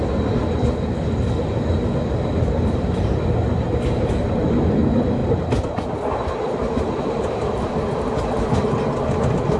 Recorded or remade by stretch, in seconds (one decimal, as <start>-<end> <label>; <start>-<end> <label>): 0.0-9.6 recorded